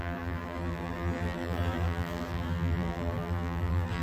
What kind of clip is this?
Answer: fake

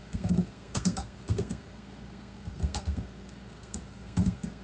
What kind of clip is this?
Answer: fake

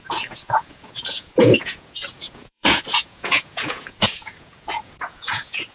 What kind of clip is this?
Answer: fake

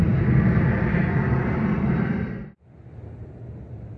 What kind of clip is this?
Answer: real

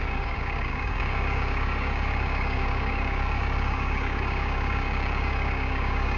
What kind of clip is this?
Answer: fake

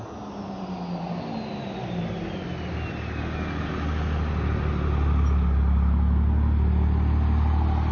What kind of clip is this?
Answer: real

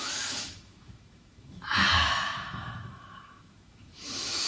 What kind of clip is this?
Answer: fake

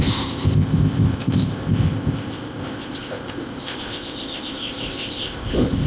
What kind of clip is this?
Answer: fake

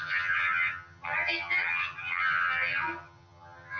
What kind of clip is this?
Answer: fake